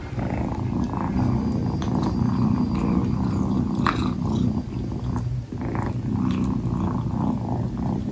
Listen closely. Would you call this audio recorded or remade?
recorded